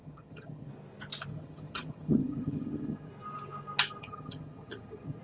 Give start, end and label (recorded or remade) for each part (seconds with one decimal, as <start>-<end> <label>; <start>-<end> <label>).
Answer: 0.0-0.7 remade; 0.7-1.3 recorded; 1.3-3.1 remade; 3.1-4.0 recorded; 4.0-5.2 remade